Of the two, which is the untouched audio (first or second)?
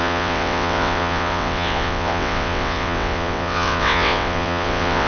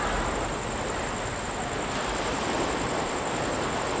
second